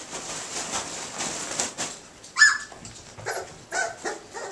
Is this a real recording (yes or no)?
yes